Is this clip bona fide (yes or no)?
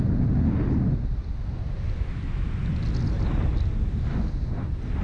yes